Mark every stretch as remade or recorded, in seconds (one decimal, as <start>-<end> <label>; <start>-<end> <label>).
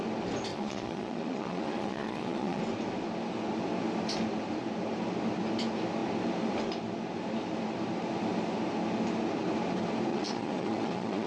0.0-0.5 recorded; 0.5-2.6 remade; 2.6-10.1 recorded; 10.1-11.3 remade